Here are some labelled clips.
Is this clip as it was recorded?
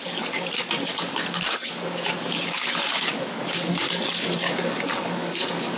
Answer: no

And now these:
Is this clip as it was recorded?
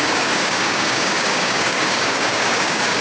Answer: no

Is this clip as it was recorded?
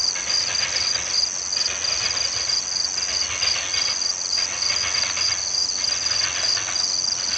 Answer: yes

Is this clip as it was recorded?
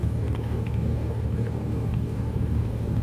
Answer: no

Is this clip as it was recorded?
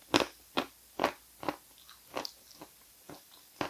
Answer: yes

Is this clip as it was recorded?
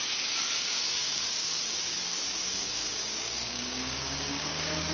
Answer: no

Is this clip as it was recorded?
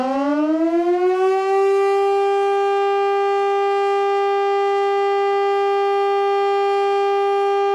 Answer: yes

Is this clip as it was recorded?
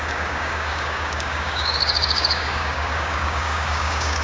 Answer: no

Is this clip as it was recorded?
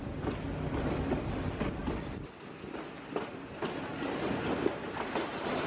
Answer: yes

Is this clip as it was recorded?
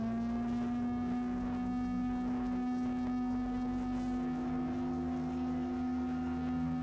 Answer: no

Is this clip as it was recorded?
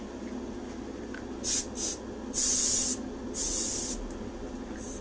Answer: yes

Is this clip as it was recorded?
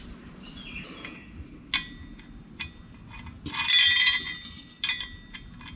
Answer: yes